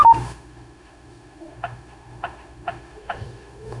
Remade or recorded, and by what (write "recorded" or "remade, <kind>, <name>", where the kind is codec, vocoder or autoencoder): remade, autoencoder, DAC-VAE